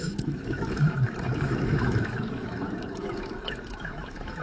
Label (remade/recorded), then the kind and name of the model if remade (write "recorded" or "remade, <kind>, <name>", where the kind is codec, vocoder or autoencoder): remade, autoencoder, DAC-VAE